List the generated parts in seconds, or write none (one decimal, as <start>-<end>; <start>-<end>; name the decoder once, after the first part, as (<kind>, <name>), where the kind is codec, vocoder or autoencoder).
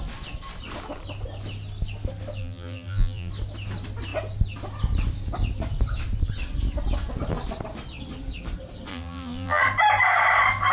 2.4-3.3 (vocoder, BigVGAN v2); 8.9-9.6